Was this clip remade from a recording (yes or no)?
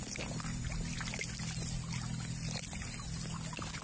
no